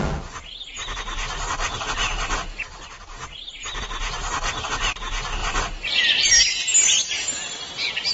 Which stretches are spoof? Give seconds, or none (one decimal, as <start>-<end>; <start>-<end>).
none